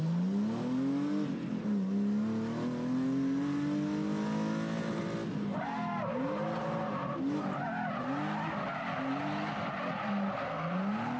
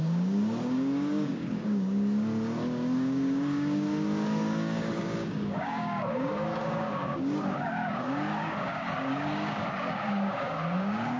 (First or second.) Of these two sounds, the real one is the first